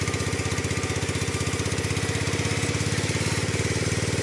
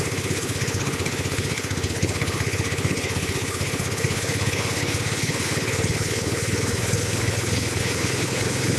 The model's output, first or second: second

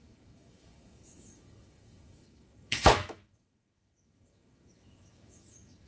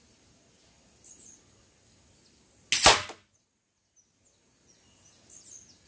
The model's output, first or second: first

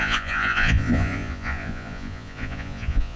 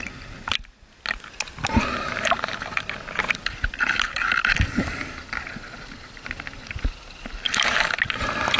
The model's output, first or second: first